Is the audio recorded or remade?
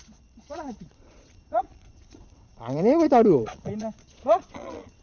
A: remade